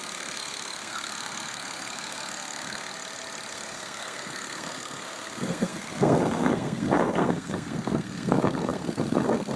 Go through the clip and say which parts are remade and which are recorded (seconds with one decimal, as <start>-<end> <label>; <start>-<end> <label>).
0.0-2.9 remade; 2.9-3.5 recorded; 3.5-9.6 remade